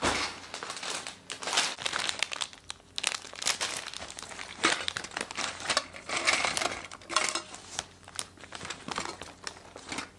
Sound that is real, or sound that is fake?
real